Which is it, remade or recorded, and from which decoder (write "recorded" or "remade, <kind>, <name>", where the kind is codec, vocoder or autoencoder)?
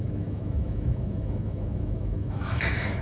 remade, autoencoder, DAC-VAE